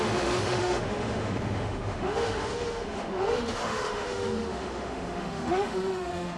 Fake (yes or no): yes